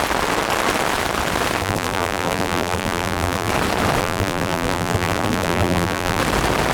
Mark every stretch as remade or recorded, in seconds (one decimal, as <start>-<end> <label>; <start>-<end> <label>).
0.0-1.6 recorded; 1.6-3.5 remade; 3.5-4.0 recorded; 4.0-6.2 remade; 6.2-6.7 recorded